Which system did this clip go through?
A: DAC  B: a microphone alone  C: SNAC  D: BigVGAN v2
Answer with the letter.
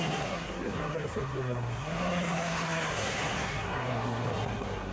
C